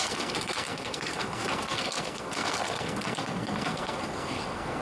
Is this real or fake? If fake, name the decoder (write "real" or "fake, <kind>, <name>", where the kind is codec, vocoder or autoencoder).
fake, codec, SNAC